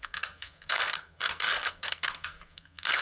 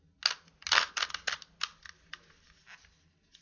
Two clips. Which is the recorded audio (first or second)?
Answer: second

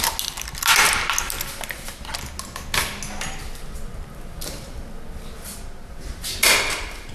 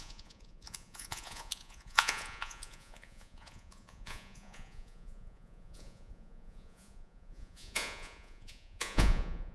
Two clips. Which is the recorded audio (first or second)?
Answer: first